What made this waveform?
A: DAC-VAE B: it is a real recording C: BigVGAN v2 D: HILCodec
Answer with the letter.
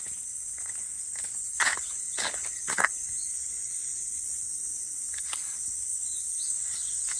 D